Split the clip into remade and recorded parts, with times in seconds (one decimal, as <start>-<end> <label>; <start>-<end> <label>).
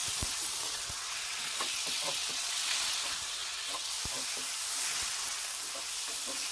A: 0.0-3.9 remade; 3.9-4.9 recorded; 4.9-5.4 remade; 5.4-6.5 recorded